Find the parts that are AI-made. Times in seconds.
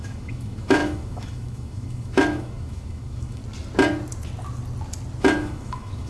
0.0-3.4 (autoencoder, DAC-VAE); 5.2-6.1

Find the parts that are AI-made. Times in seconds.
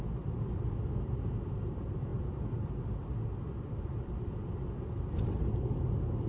none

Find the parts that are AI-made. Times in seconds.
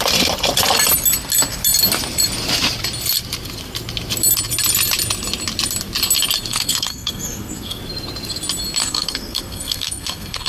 6.5-7.8 (codec, SNAC); 8.8-10.5